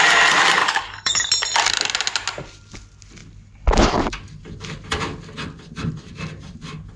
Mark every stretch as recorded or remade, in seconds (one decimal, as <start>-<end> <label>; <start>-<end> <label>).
0.0-0.6 recorded; 0.6-1.3 remade; 1.3-7.0 recorded